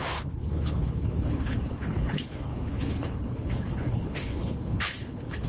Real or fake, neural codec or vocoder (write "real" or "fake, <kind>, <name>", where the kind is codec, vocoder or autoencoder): fake, codec, HILCodec